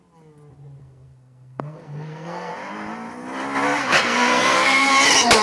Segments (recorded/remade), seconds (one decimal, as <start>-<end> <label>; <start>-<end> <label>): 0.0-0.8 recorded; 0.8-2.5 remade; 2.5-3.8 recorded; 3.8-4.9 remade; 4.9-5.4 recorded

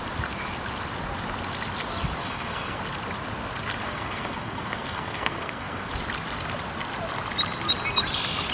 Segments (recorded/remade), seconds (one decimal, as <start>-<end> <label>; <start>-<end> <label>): 0.0-2.2 recorded; 2.2-2.8 remade; 2.8-3.8 recorded; 3.8-5.9 remade; 5.9-8.5 recorded

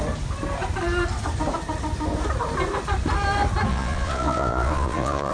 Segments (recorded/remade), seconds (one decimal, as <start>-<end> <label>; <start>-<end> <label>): 0.0-3.7 recorded; 3.7-5.3 remade

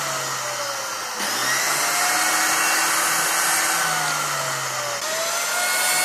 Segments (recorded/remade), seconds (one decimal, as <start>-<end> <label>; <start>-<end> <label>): 0.0-6.0 recorded